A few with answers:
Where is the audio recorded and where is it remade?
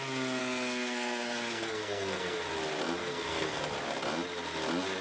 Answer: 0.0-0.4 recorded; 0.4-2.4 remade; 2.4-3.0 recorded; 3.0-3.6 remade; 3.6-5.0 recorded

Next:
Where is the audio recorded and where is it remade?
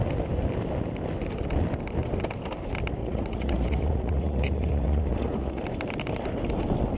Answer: 0.0-3.0 recorded; 3.0-5.6 remade; 5.6-7.0 recorded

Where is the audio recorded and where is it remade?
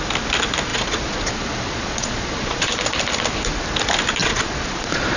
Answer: 0.0-0.7 recorded; 0.7-2.7 remade; 2.7-4.2 recorded; 4.2-5.2 remade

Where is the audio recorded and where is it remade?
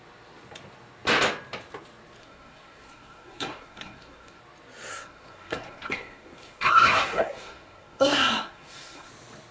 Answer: 0.0-2.2 recorded; 2.2-4.4 remade; 4.4-4.9 recorded; 4.9-9.1 remade; 9.1-9.5 recorded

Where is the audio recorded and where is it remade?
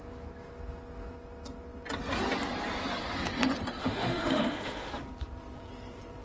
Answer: 0.0-3.8 recorded; 3.8-4.9 remade; 4.9-6.2 recorded